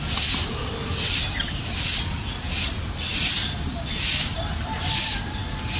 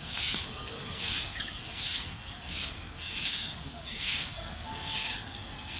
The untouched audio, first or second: first